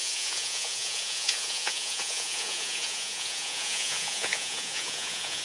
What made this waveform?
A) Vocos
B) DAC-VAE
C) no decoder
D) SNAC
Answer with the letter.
A